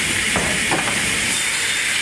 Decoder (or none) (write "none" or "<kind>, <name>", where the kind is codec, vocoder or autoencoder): vocoder, BigVGAN v2